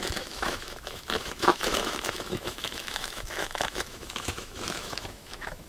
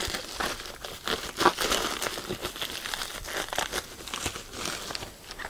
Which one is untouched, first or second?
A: second